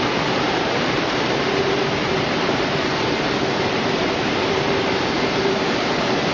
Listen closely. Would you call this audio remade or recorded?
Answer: remade